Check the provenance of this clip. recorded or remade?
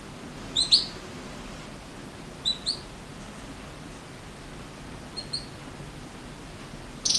recorded